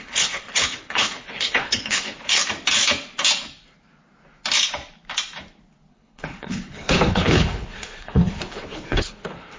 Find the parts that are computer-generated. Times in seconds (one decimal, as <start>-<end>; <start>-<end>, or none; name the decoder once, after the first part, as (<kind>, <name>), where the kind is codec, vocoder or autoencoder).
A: 0.0-2.4 (codec, HILCodec); 5.9-9.6